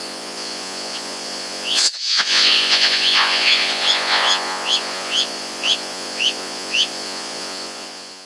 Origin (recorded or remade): remade